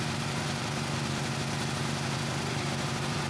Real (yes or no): no